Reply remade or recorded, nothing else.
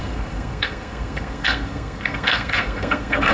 remade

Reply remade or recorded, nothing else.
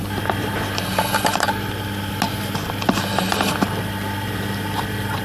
recorded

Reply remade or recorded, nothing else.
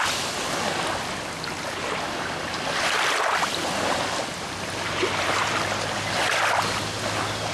recorded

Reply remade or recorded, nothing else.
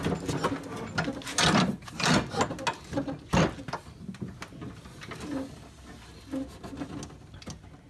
recorded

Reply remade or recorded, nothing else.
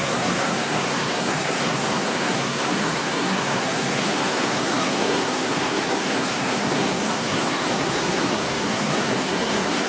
remade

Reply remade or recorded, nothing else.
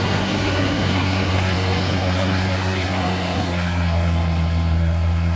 remade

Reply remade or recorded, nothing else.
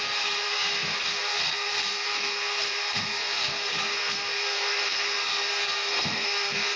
remade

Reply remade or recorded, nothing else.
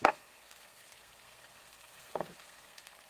remade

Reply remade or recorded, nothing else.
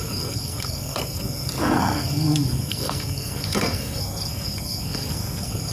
remade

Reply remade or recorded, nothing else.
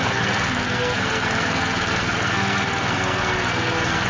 remade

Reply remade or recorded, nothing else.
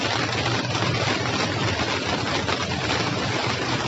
recorded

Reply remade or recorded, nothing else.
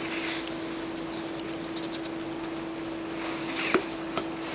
recorded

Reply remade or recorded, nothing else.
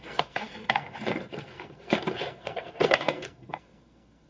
remade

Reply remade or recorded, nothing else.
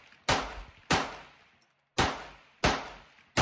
recorded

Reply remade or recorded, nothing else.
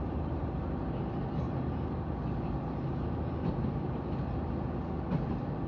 recorded